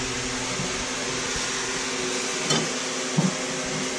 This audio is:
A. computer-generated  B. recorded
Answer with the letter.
B